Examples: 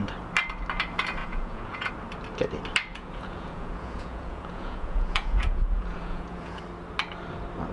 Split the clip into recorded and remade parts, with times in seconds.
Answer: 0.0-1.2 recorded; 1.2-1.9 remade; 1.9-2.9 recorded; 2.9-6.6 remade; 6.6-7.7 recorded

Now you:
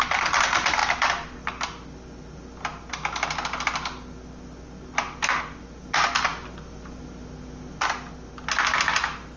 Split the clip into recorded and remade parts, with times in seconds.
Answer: 0.0-9.4 recorded

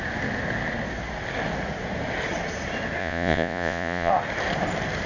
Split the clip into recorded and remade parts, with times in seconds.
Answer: 0.0-3.0 recorded; 3.0-4.1 remade; 4.1-5.1 recorded

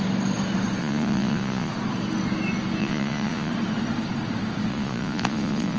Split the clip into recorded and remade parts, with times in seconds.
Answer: 0.0-0.8 recorded; 0.8-1.7 remade; 1.7-2.8 recorded; 2.8-3.5 remade; 3.5-4.7 recorded; 4.7-5.8 remade

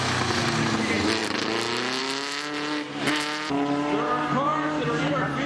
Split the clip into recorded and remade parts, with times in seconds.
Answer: 0.0-5.5 recorded